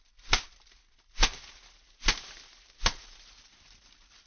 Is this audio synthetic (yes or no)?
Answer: no